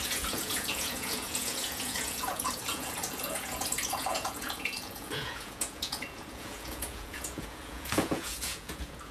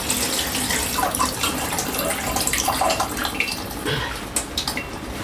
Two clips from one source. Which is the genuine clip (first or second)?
second